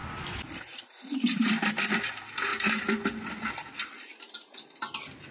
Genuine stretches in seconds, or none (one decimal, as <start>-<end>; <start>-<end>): 1.7-5.3